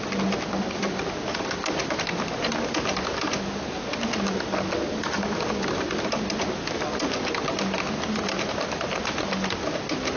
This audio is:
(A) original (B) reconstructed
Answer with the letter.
A